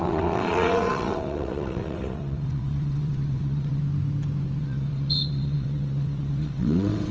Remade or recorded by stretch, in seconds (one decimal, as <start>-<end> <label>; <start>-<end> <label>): 0.0-3.8 remade; 3.8-4.6 recorded; 4.6-7.1 remade